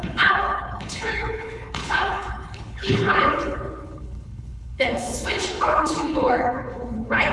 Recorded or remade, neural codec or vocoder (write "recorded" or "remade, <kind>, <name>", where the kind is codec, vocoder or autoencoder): remade, codec, HILCodec